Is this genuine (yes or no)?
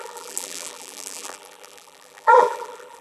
no